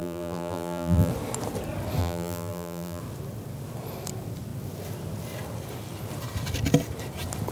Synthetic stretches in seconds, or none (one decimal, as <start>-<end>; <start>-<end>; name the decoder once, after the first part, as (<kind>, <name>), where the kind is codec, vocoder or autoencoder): 0.0-1.1 (vocoder, BigVGAN v2); 2.0-3.0